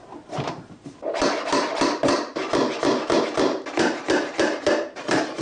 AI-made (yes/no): yes